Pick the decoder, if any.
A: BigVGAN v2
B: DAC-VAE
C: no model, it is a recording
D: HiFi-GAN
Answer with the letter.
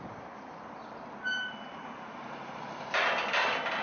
C